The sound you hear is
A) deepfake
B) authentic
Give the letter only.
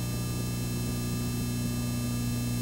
B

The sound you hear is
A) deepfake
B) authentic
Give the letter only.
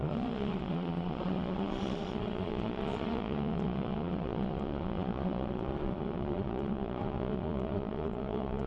A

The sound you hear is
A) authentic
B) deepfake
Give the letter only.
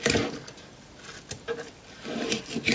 A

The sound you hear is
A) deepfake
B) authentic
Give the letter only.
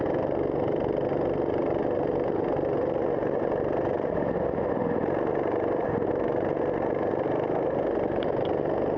B